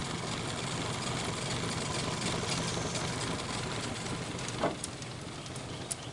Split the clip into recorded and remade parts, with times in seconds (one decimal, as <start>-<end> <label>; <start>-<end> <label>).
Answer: 0.0-6.1 recorded